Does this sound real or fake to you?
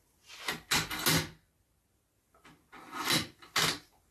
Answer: real